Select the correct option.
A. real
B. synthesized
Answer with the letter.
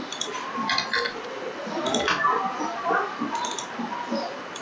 A